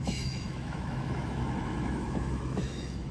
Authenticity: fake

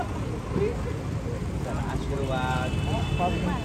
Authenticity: real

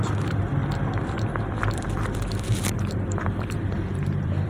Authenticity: fake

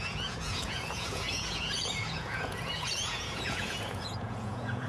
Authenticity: fake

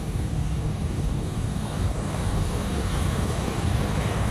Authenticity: fake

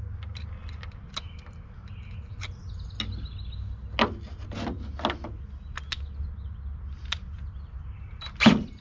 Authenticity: real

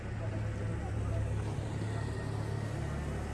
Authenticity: real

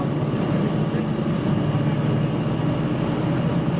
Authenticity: real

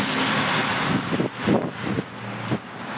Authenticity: real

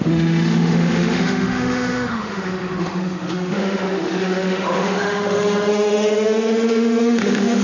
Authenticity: fake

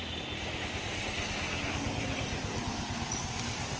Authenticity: real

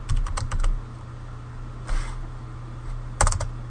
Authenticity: real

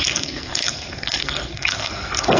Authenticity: fake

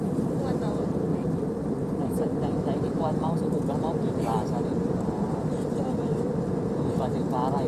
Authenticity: fake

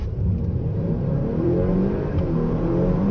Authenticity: fake